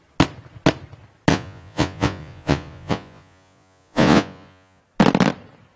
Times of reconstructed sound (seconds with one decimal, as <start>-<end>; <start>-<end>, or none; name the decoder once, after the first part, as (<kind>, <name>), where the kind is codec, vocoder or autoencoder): 1.3-4.8 (vocoder, Vocos)